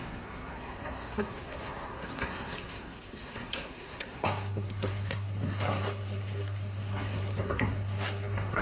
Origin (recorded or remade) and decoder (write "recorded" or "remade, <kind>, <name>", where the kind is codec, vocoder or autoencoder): remade, codec, SNAC